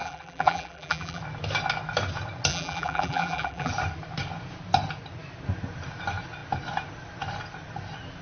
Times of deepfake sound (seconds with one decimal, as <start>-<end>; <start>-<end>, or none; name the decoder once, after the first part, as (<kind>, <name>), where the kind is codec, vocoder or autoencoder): 0.0-1.2 (vocoder, BigVGAN v2); 2.5-3.7